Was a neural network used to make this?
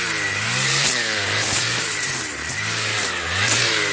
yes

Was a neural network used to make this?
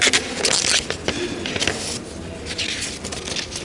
no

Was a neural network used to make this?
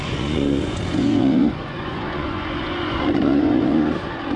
yes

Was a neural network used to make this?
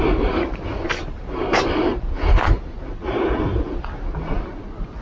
no